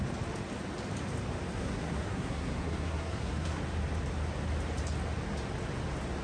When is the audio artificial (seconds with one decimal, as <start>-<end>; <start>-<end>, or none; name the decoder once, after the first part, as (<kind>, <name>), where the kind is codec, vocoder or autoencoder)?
1.5-3.6 (codec, SNAC)